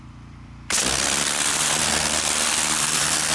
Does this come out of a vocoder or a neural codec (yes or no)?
yes